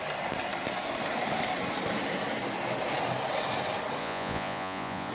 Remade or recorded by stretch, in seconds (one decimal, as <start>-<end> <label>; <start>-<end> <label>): 0.0-4.0 recorded; 4.0-5.1 remade